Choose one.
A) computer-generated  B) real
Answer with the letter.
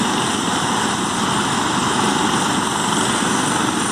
B